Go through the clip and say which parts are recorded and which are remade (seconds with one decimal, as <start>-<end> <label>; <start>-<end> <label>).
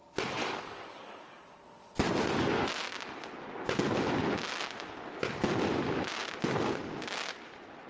0.0-0.4 recorded; 0.4-1.4 remade; 1.4-7.9 recorded